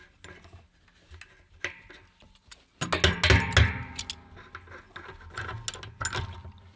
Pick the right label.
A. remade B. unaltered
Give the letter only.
B